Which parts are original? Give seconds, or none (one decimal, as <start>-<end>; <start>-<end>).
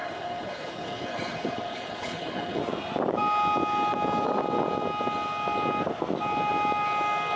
2.6-7.4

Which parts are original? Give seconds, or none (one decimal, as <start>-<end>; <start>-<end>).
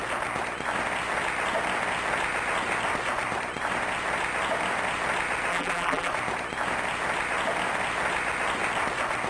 0.0-5.5; 6.1-9.3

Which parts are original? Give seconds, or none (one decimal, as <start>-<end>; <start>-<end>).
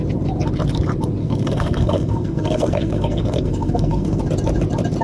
0.0-1.2; 4.2-5.0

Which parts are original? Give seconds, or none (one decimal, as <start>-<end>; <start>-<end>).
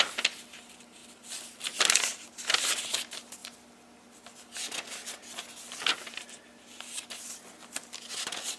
0.0-8.6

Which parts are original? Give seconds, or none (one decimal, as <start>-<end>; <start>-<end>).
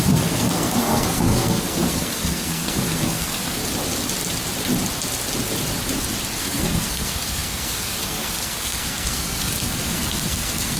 3.6-6.4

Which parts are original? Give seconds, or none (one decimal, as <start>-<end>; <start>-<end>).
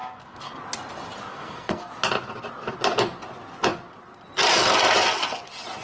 0.5-1.3; 1.9-5.8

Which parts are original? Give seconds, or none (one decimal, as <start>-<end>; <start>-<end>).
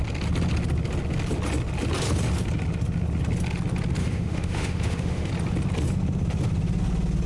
0.0-4.0; 5.3-7.3